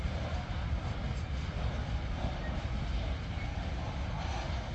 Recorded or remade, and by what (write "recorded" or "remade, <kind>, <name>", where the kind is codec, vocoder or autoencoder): recorded